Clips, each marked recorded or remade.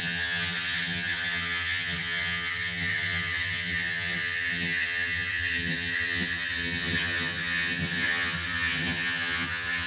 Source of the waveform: remade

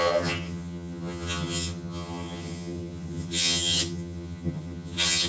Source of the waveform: remade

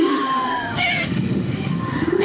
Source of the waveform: remade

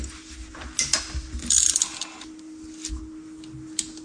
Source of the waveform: recorded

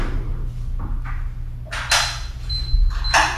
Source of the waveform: recorded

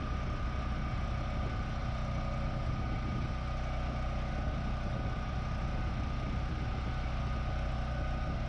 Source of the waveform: recorded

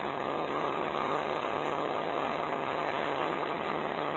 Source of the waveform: remade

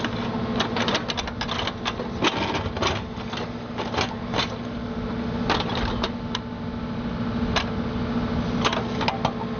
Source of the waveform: recorded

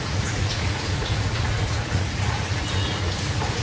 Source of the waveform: remade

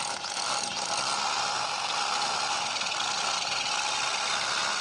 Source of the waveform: recorded